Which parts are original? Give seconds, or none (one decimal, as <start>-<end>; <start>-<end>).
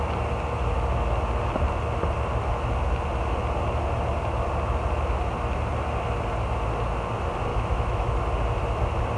0.0-7.5; 8.1-9.2